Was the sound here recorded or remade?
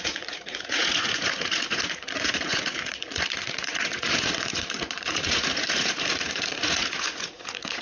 remade